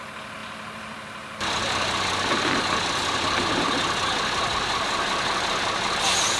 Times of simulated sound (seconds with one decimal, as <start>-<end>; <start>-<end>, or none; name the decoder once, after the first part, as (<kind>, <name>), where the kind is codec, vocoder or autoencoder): 0.4-4.2 (vocoder, BigVGAN v2)